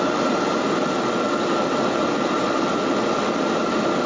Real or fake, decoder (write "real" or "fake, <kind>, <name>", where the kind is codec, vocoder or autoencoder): real